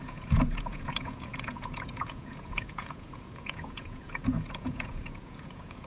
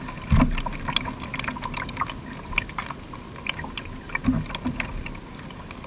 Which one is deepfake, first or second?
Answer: first